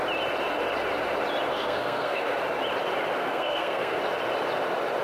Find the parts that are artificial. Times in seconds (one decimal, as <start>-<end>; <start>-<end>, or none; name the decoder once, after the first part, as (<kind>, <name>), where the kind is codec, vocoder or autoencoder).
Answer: 1.5-2.4 (codec, SNAC); 3.2-4.0